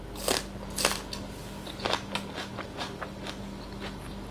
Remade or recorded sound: recorded